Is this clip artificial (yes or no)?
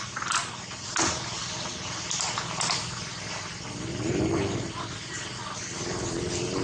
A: no